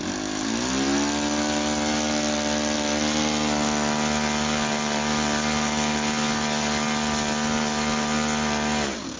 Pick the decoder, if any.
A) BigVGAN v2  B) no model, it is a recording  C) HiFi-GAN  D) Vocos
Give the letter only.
B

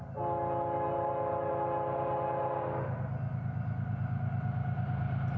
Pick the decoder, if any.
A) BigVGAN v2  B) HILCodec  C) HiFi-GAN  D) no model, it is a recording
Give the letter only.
D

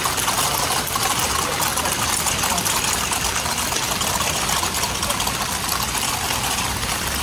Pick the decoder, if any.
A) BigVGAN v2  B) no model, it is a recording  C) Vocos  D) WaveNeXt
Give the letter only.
B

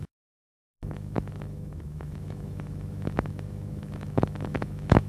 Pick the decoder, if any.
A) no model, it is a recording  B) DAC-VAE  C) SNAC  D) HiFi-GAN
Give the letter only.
B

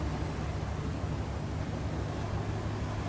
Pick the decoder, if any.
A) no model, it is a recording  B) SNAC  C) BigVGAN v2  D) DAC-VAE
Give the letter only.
A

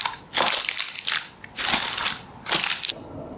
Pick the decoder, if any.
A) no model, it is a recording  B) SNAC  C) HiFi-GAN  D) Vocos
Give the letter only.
A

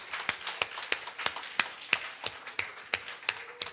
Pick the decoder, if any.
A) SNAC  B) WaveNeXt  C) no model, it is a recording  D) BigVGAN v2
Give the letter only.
C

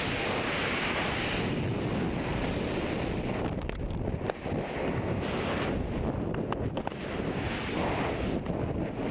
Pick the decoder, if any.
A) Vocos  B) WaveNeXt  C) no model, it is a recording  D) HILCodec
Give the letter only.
C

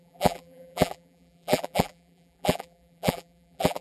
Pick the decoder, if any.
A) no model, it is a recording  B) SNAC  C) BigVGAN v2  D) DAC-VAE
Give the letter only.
C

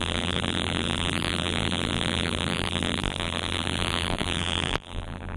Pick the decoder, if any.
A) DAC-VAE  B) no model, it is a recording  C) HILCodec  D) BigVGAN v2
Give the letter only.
D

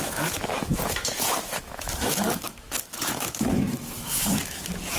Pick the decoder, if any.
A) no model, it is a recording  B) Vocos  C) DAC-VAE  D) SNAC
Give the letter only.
C